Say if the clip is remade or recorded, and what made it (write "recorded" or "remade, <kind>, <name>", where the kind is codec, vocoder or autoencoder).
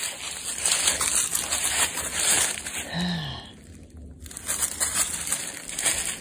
recorded